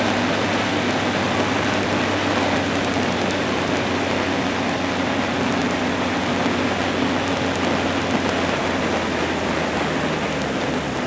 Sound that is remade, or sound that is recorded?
recorded